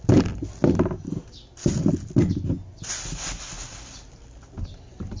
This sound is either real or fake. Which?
real